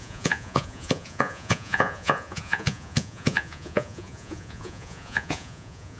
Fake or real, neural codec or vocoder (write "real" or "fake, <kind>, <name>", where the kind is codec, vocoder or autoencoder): fake, vocoder, Vocos